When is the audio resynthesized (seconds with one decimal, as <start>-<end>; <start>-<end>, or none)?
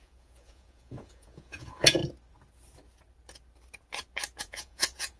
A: 0.0-2.0; 4.4-5.2